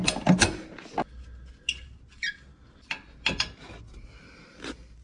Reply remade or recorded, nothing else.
recorded